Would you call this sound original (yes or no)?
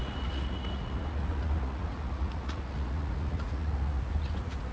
no